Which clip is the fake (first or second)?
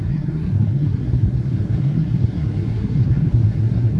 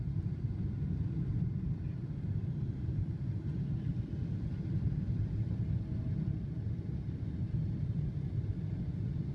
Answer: first